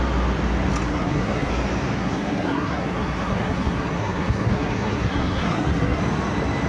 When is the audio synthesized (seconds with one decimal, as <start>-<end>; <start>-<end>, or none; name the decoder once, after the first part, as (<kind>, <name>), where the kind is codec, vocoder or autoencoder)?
0.9-1.5 (codec, SNAC); 2.0-6.0